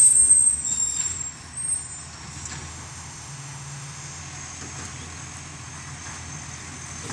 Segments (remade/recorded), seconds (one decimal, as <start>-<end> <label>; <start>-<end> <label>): 0.0-2.7 recorded; 2.7-4.2 remade; 4.2-7.1 recorded